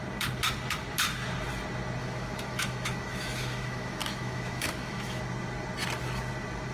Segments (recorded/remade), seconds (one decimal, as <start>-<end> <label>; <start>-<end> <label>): 0.0-2.0 recorded; 2.0-5.2 remade; 5.2-6.7 recorded